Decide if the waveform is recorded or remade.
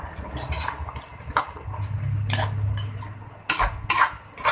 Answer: recorded